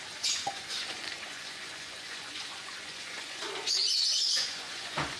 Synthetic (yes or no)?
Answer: yes